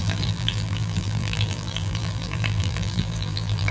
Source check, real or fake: fake